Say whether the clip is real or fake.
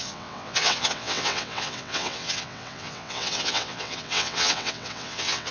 fake